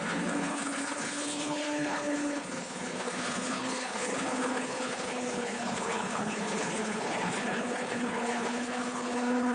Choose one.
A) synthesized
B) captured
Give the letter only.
A